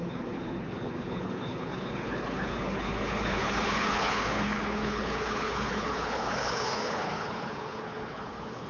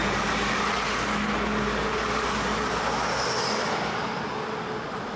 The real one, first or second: second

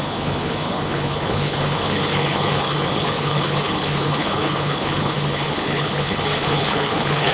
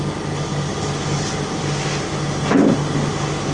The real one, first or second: second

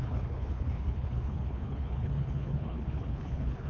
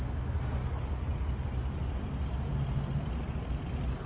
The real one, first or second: second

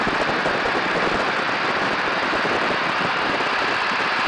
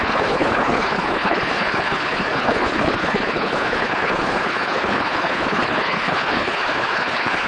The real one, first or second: first